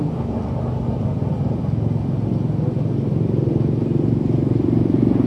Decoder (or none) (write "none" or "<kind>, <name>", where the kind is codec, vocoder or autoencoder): none